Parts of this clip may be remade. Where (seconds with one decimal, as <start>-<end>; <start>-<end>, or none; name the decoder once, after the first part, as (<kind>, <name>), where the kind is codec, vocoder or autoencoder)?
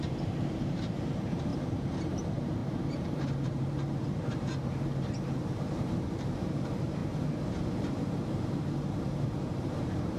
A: 0.0-10.2 (vocoder, BigVGAN v2)